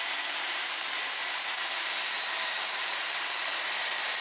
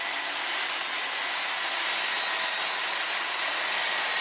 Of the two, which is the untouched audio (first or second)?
second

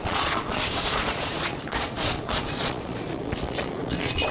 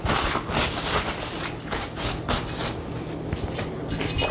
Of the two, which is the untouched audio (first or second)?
second